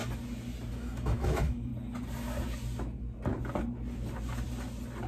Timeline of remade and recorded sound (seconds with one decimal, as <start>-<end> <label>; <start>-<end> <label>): 0.0-0.7 recorded; 0.7-1.7 remade; 1.7-5.1 recorded